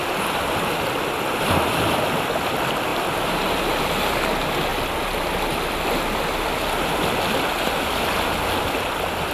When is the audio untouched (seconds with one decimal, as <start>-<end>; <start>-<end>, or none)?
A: 0.0-9.3